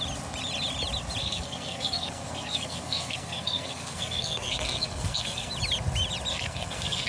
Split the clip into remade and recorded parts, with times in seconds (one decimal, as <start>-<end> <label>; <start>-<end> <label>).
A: 0.0-1.2 recorded; 1.2-5.5 remade; 5.5-6.3 recorded; 6.3-7.1 remade